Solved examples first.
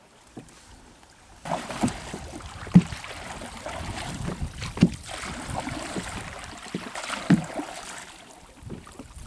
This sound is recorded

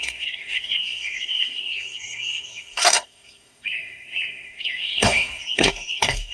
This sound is remade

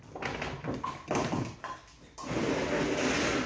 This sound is recorded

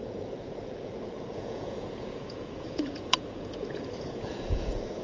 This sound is remade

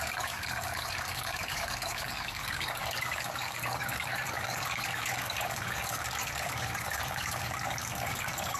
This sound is remade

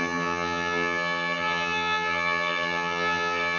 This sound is remade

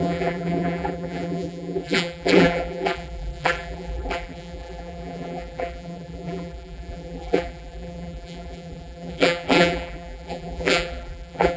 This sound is remade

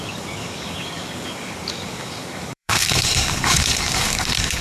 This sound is remade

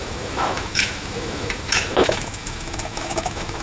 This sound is remade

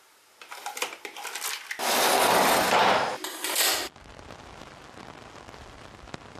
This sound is recorded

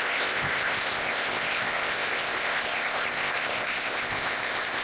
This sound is remade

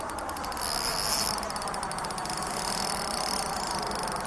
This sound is recorded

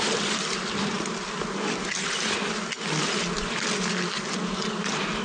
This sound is recorded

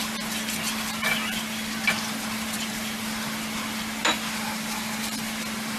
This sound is remade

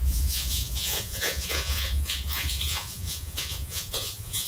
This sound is remade